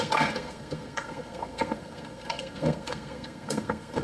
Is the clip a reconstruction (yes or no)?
yes